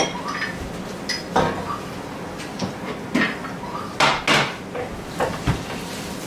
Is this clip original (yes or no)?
yes